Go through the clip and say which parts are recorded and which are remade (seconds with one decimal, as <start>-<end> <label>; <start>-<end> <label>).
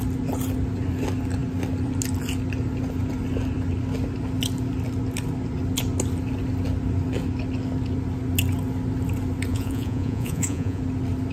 0.0-9.5 recorded; 9.5-10.8 remade; 10.8-11.3 recorded